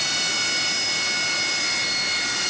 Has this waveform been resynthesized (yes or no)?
no